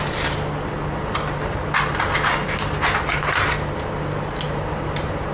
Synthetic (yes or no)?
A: no